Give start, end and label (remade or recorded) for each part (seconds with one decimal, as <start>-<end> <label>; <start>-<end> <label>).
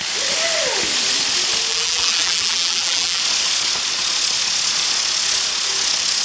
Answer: 0.0-1.7 recorded; 1.7-3.2 remade; 3.2-6.2 recorded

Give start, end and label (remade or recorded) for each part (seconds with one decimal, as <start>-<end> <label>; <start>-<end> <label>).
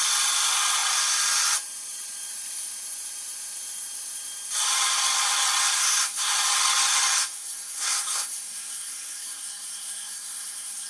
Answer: 0.0-5.8 recorded; 5.8-6.3 remade; 6.3-7.2 recorded; 7.2-10.9 remade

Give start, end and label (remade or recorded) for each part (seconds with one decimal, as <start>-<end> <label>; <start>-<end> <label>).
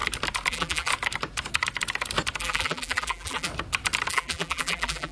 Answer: 0.0-0.5 recorded; 0.5-0.9 remade; 0.9-2.4 recorded; 2.4-3.5 remade; 3.5-4.1 recorded; 4.1-5.1 remade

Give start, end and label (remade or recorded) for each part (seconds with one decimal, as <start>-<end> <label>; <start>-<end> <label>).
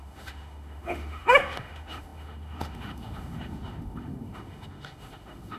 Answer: 0.0-5.6 remade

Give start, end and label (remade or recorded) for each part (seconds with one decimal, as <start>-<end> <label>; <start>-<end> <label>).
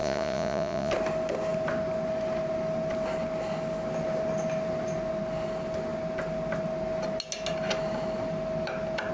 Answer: 0.0-0.9 remade; 0.9-9.1 recorded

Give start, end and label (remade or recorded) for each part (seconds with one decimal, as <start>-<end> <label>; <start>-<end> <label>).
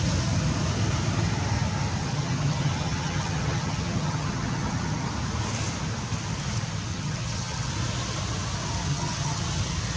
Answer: 0.0-2.0 recorded; 2.0-5.1 remade; 5.1-6.9 recorded; 6.9-7.7 remade; 7.7-8.9 recorded; 8.9-9.4 remade; 9.4-10.0 recorded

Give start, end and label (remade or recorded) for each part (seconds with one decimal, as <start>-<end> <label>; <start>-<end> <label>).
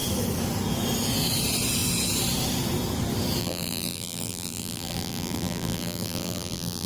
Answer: 0.0-3.4 recorded; 3.4-6.9 remade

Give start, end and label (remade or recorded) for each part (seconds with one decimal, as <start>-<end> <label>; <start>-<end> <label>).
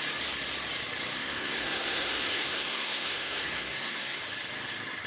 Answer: 0.0-1.2 recorded; 1.2-4.2 remade; 4.2-5.1 recorded